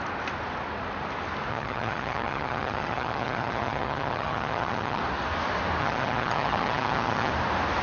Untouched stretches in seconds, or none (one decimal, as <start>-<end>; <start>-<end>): 0.0-1.5; 5.0-5.8; 7.3-7.8